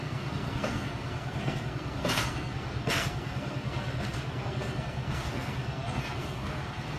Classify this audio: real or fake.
fake